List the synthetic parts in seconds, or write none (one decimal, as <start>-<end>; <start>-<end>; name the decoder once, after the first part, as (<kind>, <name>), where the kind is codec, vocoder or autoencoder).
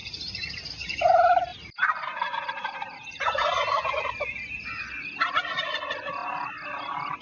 0.0-0.7 (vocoder, BigVGAN v2); 1.5-3.5